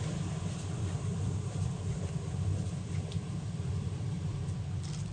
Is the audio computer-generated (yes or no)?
yes